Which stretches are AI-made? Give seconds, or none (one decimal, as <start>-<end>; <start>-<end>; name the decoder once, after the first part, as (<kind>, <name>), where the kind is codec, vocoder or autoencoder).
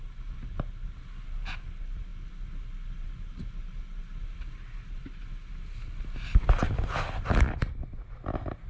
none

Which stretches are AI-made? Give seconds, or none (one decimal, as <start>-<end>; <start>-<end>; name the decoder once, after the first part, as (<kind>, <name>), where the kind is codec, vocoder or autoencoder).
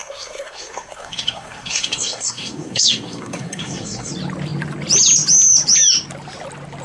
0.0-4.1 (codec, SNAC)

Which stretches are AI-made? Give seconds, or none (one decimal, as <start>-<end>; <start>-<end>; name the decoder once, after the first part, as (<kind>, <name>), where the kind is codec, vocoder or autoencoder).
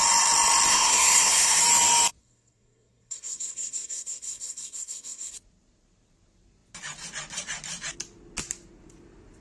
0.7-1.6 (codec, SNAC); 2.2-5.3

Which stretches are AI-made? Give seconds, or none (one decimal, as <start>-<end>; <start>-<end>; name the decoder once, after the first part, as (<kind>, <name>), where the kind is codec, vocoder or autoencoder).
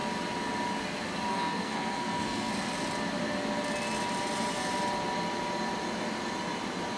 1.3-2.5 (codec, SNAC)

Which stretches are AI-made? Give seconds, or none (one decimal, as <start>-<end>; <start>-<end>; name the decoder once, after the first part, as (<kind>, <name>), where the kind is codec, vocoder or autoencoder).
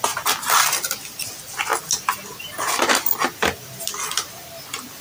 none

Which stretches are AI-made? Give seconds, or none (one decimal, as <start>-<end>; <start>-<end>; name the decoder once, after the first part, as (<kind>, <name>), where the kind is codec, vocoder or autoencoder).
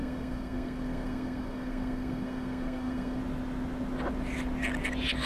0.0-3.2 (codec, SNAC)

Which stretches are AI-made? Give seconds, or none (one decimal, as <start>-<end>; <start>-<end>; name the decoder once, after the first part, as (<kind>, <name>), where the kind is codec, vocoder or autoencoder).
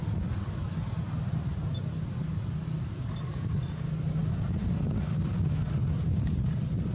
none